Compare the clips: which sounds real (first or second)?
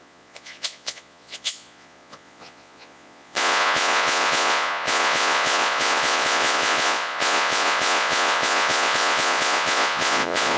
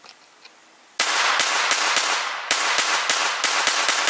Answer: second